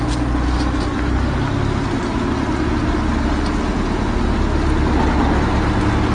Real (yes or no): yes